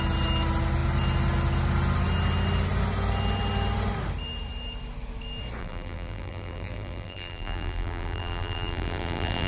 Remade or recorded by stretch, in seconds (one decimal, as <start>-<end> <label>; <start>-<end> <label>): 0.0-5.6 recorded; 5.6-9.5 remade